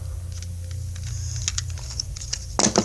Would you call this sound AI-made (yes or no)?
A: no